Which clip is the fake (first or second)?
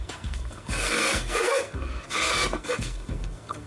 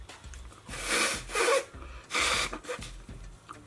first